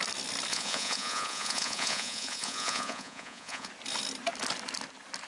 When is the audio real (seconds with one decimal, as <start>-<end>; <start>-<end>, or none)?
0.0-0.5; 3.7-5.3